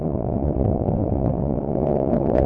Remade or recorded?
remade